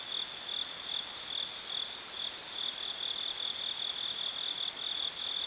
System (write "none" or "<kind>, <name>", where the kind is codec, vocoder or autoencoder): none